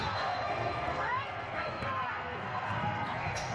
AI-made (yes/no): yes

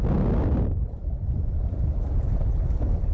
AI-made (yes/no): no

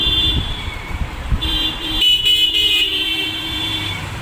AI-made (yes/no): yes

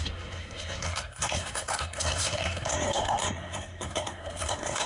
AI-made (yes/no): yes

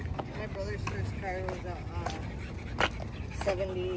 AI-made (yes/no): no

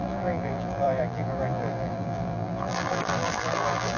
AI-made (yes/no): yes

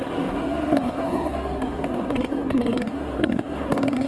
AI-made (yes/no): yes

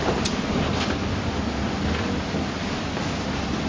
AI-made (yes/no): no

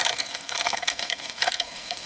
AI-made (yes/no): yes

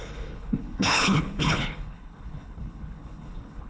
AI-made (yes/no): yes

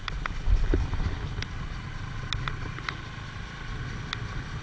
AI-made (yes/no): no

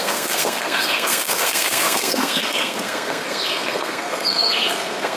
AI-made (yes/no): yes